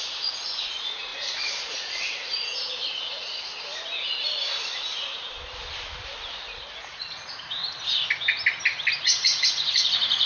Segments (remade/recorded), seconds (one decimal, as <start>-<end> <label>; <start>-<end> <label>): 0.0-3.5 remade; 3.5-6.3 recorded; 6.3-7.6 remade; 7.6-9.0 recorded; 9.0-10.3 remade